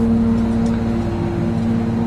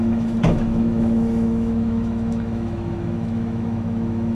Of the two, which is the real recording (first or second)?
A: first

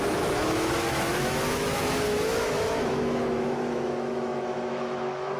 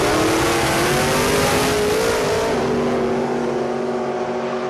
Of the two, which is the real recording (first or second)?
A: second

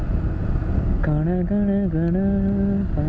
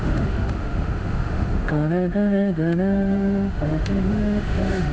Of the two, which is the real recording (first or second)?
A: first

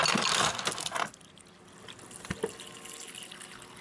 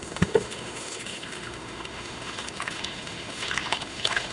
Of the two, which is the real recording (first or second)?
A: first